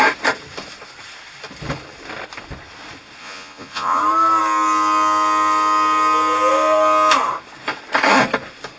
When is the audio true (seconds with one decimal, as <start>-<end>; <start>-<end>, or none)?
0.0-3.2; 4.0-8.8